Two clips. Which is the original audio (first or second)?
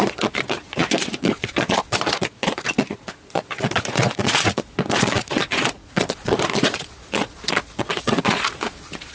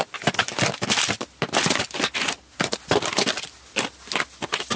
second